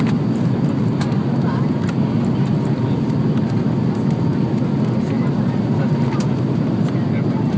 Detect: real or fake real